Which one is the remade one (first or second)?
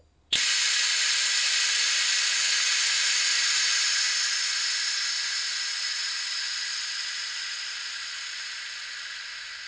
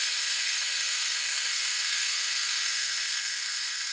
second